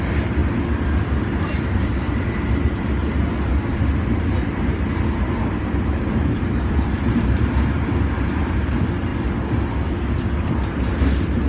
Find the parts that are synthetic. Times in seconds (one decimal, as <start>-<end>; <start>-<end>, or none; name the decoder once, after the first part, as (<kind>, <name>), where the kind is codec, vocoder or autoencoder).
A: 0.0-0.4 (vocoder, BigVGAN v2); 1.2-9.1; 10.4-11.5